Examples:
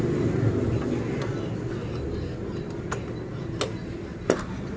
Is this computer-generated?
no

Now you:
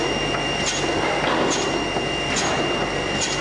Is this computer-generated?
no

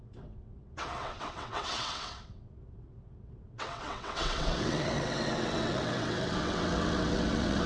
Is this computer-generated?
yes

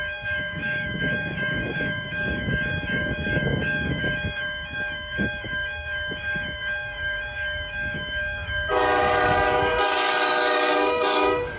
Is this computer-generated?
yes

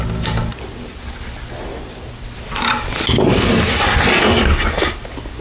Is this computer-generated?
no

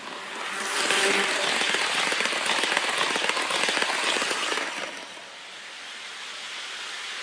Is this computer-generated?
no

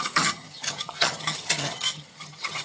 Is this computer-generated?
yes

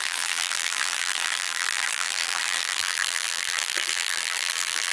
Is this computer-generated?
yes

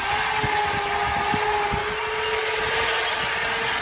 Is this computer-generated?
no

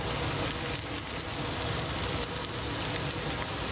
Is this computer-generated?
no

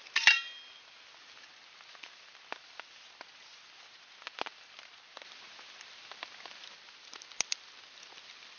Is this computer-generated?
no